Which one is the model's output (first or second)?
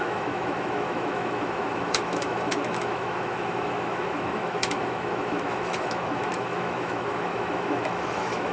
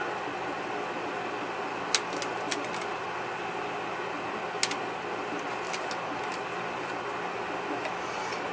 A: first